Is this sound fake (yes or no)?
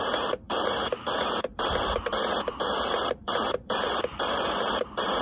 yes